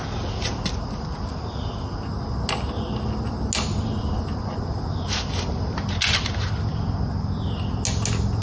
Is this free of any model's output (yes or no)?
yes